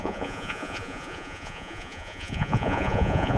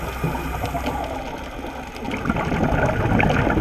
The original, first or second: second